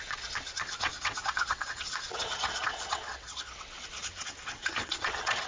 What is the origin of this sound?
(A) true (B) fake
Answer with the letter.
B